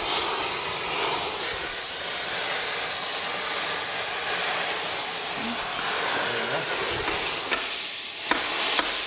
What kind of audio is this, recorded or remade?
recorded